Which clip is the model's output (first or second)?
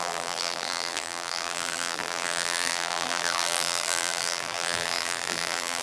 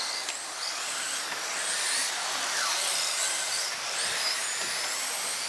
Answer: first